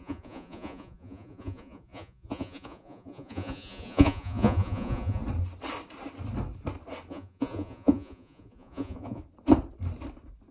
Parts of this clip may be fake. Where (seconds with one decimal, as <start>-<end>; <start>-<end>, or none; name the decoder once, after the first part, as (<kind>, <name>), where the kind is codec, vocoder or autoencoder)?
0.0-5.2 (vocoder, Vocos); 7.1-9.2